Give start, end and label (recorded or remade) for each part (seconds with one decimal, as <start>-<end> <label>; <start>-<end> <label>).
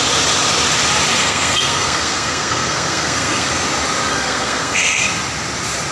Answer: 0.0-1.2 recorded; 1.2-3.5 remade; 3.5-4.1 recorded; 4.1-5.0 remade; 5.0-5.9 recorded